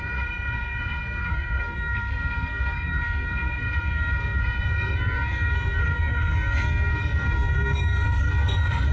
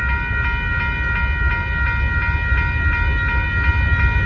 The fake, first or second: first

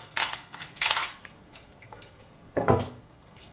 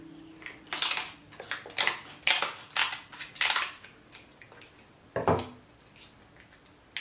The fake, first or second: first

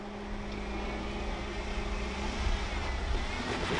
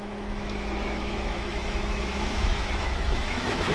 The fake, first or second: second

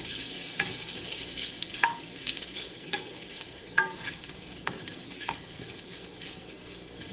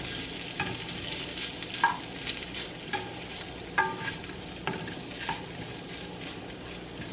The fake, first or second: first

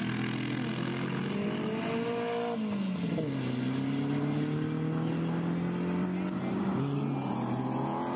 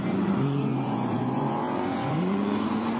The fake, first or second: second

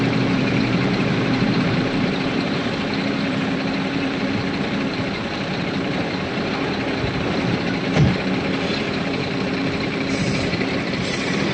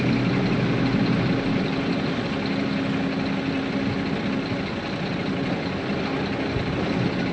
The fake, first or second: first